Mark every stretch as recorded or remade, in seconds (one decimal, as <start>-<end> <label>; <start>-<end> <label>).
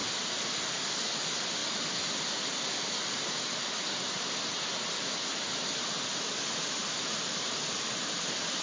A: 0.0-0.7 remade; 0.7-6.8 recorded; 6.8-8.2 remade; 8.2-8.6 recorded